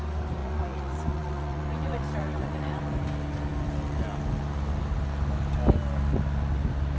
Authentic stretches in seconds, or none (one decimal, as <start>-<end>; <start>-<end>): 0.0-0.4; 2.8-7.0